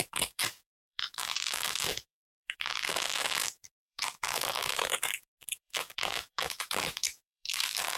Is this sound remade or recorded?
remade